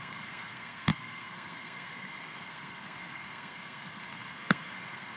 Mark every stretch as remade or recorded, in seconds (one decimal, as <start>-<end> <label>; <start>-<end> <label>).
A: 0.0-5.2 remade